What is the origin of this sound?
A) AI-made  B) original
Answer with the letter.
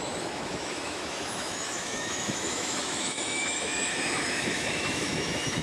A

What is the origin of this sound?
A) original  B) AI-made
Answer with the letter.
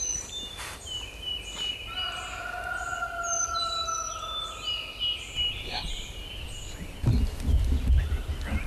A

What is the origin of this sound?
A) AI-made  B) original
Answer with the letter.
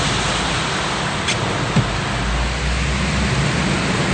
B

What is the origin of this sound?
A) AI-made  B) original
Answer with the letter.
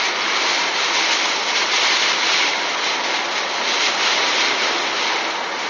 B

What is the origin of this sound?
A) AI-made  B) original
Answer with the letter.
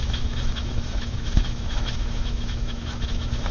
A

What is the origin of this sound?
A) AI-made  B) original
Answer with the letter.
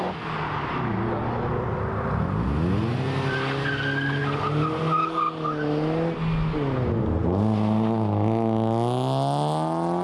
B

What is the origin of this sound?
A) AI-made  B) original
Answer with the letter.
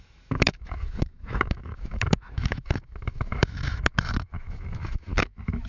A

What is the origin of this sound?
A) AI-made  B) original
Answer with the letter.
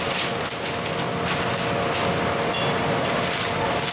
B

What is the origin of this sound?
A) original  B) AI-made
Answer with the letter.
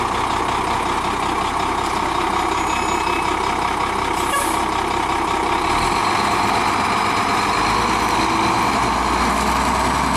A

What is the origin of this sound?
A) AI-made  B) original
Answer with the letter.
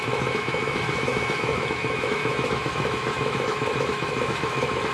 A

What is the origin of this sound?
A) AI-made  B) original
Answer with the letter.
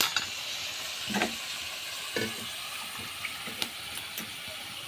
B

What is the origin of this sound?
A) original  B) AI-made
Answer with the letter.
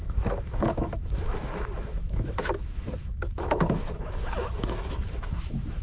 B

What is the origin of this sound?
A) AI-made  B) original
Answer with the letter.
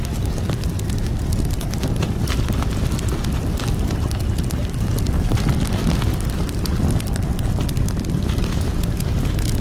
B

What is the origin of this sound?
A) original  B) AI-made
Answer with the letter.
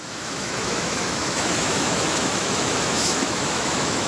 B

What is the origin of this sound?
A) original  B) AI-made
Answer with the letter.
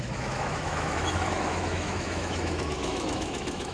B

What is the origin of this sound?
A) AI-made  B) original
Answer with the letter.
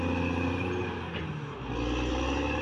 B